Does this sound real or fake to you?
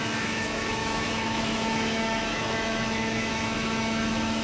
fake